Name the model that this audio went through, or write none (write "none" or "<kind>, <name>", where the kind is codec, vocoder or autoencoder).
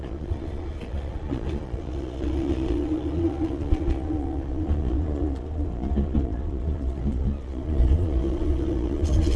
vocoder, Vocos